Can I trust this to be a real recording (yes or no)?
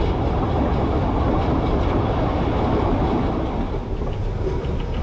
yes